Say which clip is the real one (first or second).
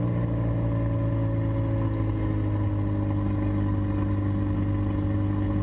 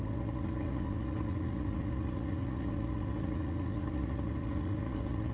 first